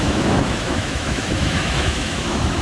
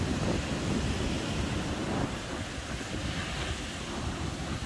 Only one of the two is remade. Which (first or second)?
first